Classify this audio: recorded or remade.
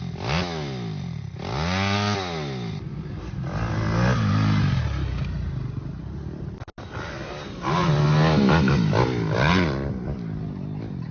recorded